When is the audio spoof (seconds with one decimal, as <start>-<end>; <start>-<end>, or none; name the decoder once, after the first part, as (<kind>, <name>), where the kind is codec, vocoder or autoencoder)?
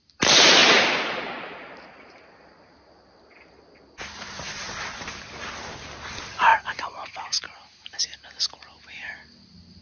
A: 0.6-2.3 (vocoder, BigVGAN v2); 6.5-8.0